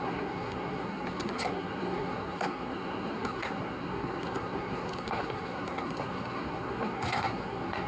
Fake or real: fake